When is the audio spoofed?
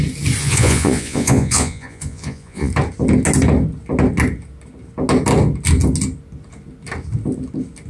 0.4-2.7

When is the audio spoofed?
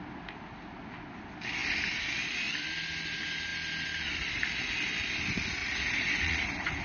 5.6-6.8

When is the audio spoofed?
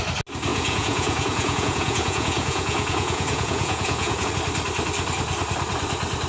0.5-4.3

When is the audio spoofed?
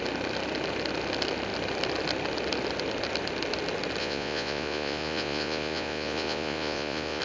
4.0-7.2